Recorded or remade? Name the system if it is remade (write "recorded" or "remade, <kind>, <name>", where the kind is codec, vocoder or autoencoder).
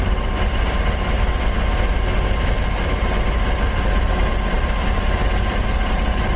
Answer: remade, vocoder, BigVGAN v2